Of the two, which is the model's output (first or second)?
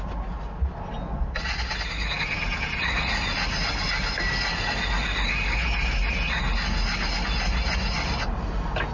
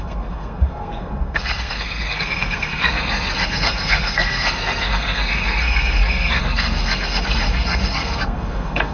second